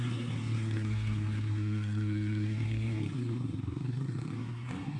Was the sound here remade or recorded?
remade